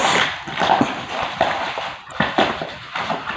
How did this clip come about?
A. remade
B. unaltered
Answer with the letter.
A